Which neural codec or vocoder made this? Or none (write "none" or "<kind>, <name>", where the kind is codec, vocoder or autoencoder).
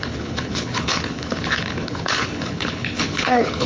codec, HILCodec